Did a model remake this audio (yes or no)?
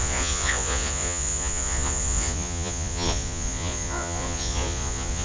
yes